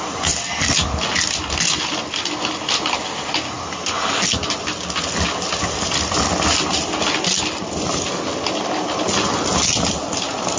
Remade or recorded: recorded